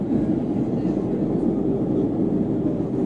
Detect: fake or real real